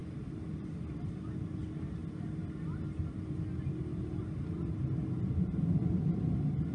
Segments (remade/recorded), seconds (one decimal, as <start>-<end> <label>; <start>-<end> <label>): 0.0-1.2 remade; 1.2-6.7 recorded